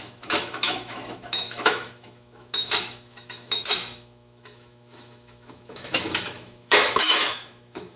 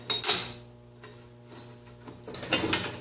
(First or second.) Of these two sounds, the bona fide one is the second